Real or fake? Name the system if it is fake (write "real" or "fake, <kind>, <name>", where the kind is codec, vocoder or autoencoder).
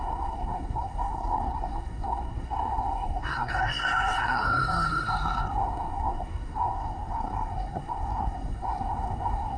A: fake, codec, SNAC